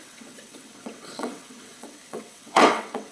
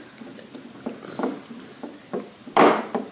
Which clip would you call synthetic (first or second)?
first